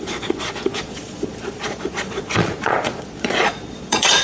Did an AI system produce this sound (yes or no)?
yes